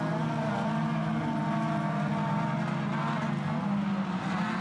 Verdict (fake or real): real